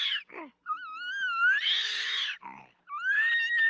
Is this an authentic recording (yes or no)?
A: yes